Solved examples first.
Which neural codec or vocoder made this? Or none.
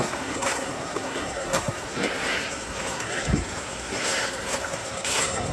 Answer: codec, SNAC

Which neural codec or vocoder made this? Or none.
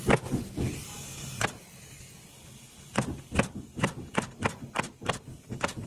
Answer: none